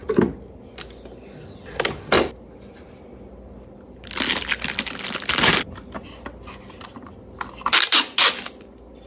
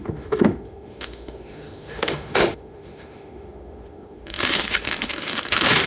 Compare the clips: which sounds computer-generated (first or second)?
second